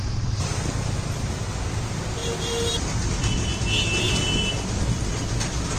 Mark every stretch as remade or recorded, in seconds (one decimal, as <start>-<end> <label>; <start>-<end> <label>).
0.0-5.8 recorded